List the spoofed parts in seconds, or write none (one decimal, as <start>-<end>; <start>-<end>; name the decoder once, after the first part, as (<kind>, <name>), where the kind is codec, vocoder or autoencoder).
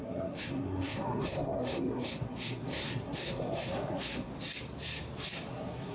0.0-4.3 (codec, SNAC); 5.5-5.9